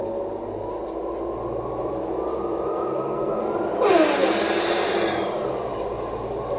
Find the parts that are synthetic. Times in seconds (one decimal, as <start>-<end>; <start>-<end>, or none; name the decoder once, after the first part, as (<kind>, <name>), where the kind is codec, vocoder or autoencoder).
2.7-3.4 (codec, SNAC)